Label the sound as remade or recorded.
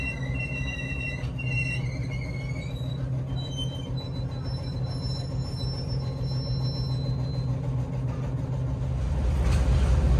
recorded